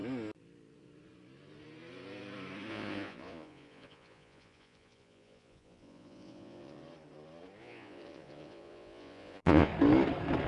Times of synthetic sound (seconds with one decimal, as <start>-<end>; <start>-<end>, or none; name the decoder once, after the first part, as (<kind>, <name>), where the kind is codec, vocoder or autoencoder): 2.7-6.8 (vocoder, Vocos); 7.6-9.7